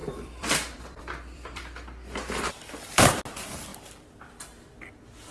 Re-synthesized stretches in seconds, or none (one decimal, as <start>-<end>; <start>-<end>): 0.0-3.2; 3.7-4.3

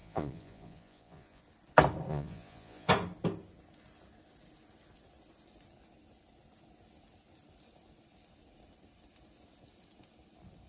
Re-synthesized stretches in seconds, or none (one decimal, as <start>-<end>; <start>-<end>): 0.0-1.4; 2.1-2.9